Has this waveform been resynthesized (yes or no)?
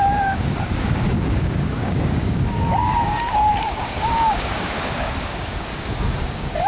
yes